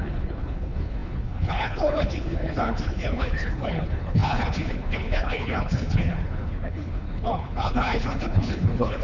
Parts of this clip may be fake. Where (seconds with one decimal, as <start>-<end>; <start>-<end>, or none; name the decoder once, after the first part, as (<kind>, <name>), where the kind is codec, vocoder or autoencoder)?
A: 0.0-9.0 (codec, HILCodec)